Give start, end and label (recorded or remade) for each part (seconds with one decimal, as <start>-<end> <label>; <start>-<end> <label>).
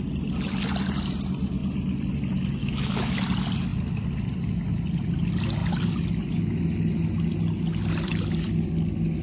0.0-2.6 recorded; 2.6-3.2 remade; 3.2-9.2 recorded